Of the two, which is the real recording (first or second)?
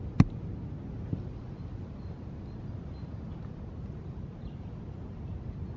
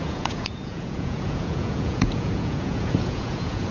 first